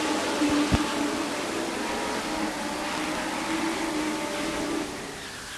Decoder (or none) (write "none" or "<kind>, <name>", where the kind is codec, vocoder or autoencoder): none